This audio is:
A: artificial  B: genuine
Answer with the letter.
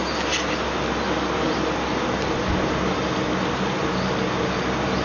B